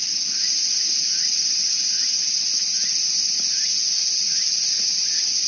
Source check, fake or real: real